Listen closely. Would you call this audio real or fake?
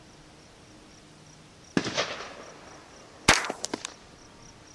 real